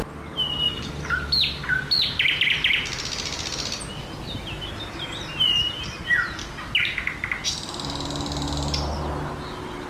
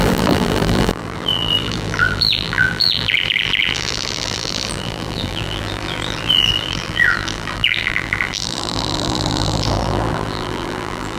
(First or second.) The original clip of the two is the first